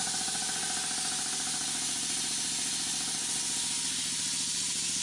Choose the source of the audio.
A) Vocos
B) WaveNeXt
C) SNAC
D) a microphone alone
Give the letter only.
D